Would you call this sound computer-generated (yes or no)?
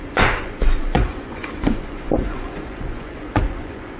yes